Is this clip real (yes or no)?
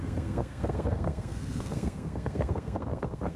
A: no